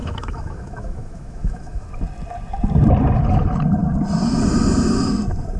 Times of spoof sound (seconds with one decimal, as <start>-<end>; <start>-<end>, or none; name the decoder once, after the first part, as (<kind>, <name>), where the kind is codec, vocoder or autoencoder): 0.0-1.9 (autoencoder, DAC-VAE)